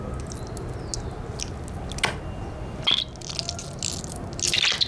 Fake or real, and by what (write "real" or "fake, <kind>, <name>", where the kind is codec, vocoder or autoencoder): real